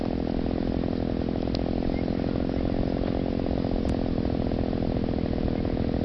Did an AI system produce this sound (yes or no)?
no